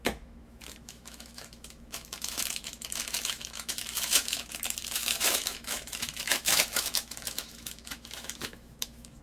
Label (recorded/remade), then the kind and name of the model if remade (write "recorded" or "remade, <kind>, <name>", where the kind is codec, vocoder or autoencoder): remade, autoencoder, DAC-VAE